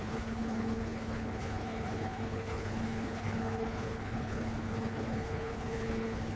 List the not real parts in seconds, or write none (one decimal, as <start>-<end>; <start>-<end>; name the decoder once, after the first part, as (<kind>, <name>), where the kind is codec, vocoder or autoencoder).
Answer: 0.0-6.4 (codec, HILCodec)